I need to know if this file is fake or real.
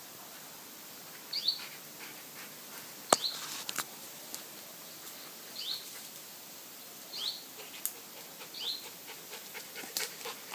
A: real